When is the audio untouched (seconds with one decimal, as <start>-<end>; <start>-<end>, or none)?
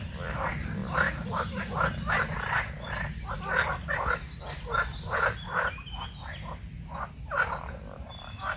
0.0-8.6